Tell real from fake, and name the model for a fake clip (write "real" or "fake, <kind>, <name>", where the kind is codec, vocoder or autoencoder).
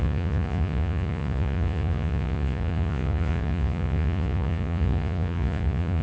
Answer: fake, vocoder, Vocos